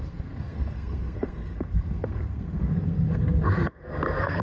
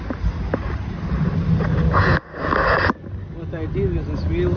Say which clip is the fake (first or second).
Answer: first